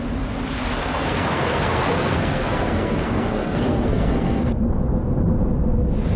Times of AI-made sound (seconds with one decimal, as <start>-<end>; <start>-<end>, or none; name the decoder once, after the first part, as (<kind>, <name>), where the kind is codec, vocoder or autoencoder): 0.8-4.5 (codec, SNAC)